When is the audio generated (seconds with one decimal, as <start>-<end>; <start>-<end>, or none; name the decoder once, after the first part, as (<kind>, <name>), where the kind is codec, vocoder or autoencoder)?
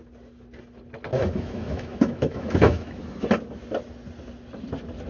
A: 1.1-3.0 (autoencoder, DAC-VAE)